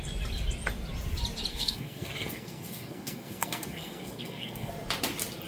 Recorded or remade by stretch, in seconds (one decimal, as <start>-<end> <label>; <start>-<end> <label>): 0.0-1.5 recorded; 1.5-4.7 remade; 4.7-5.5 recorded